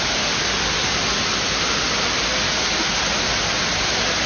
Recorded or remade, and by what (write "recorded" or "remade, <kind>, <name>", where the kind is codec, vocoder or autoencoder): recorded